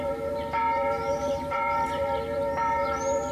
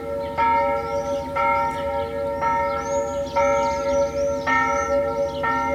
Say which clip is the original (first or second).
second